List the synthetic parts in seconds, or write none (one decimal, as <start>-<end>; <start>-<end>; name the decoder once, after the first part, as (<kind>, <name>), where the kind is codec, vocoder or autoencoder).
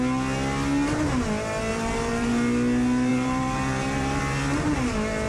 1.7-2.3 (vocoder, BigVGAN v2); 3.1-4.2